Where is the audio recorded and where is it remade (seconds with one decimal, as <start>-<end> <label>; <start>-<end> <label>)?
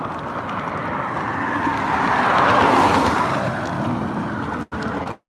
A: 0.0-5.3 recorded